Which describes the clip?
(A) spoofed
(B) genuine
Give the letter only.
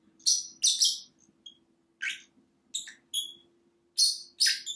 B